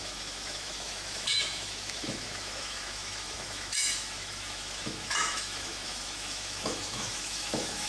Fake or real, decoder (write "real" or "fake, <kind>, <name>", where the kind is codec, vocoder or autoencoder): fake, autoencoder, DAC-VAE